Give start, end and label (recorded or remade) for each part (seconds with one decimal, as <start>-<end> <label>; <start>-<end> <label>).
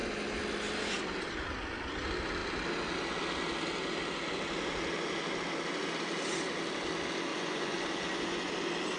0.0-7.3 recorded; 7.3-8.5 remade; 8.5-9.0 recorded